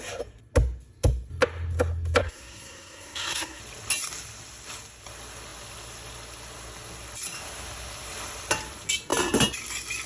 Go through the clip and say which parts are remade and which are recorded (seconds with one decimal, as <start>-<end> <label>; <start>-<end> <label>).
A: 0.0-2.2 recorded; 2.2-3.6 remade; 3.6-10.1 recorded